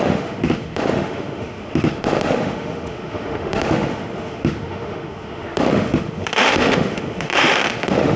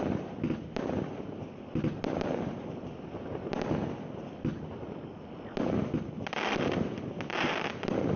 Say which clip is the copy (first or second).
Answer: first